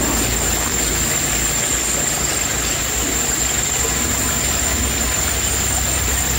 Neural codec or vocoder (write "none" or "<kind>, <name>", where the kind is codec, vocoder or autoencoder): none